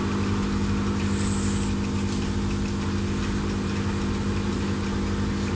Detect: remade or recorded recorded